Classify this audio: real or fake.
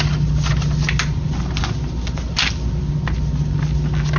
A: real